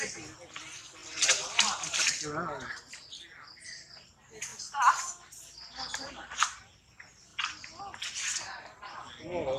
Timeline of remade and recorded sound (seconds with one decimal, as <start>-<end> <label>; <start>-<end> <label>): 0.0-1.0 recorded; 1.0-3.2 remade; 3.2-7.3 recorded; 7.3-7.8 remade; 7.8-9.6 recorded